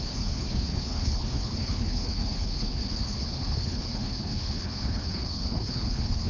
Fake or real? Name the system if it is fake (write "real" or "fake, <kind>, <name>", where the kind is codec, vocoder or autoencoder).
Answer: fake, codec, HILCodec